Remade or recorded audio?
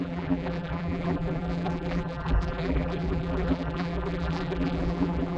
remade